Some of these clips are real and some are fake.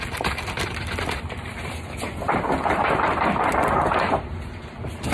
fake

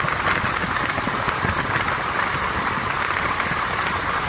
real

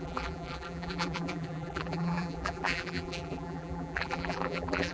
fake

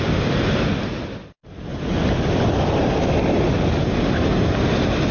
real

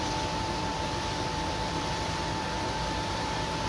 fake